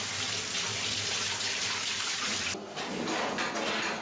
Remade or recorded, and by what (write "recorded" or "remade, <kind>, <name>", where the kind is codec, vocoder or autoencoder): recorded